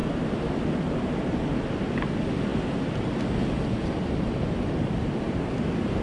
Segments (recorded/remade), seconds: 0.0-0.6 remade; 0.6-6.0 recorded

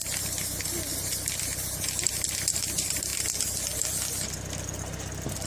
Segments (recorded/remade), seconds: 0.0-5.5 recorded

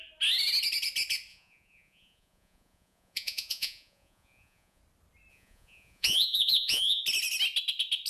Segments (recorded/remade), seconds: 0.0-1.3 recorded; 1.3-4.8 remade; 4.8-5.3 recorded; 5.3-7.0 remade; 7.0-8.1 recorded

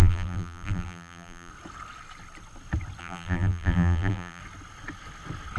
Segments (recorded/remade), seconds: 0.0-1.5 remade; 1.5-3.0 recorded; 3.0-4.4 remade; 4.4-5.6 recorded

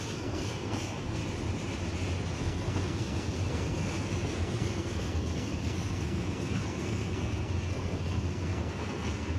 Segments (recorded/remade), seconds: 0.0-1.2 remade; 1.2-2.4 recorded; 2.4-9.4 remade

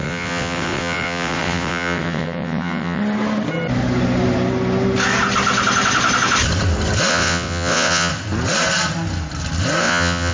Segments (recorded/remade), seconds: 0.0-3.0 remade; 3.0-7.1 recorded; 7.1-8.1 remade; 8.1-9.8 recorded; 9.8-10.3 remade